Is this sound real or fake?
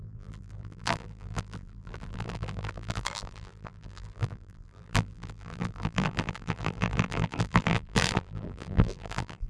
fake